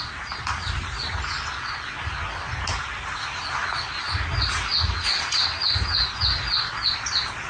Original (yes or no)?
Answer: yes